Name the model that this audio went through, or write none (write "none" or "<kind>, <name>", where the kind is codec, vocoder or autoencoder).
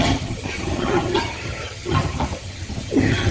vocoder, HiFi-GAN